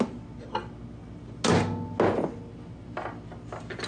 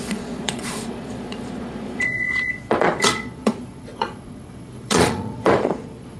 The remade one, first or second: second